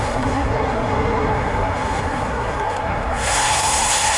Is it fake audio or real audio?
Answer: fake